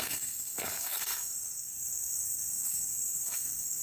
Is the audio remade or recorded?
remade